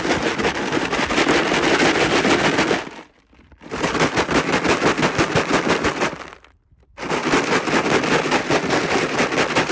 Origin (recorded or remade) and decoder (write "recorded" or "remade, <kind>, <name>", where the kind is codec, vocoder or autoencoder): recorded